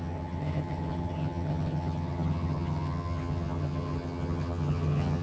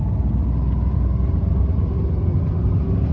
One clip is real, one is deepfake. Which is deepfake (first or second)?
first